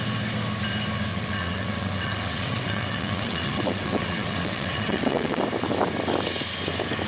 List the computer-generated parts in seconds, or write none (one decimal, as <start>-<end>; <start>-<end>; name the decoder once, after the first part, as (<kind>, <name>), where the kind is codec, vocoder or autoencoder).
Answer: 1.1-5.4 (vocoder, WaveNeXt)